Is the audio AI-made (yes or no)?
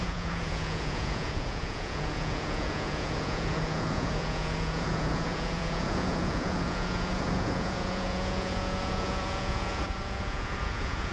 yes